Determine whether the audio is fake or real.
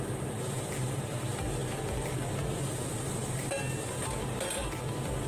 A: real